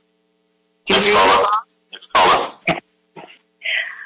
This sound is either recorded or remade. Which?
recorded